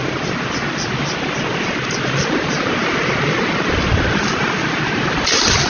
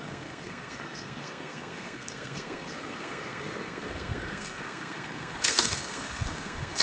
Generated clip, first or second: second